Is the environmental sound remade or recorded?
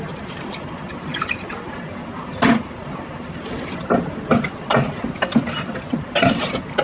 recorded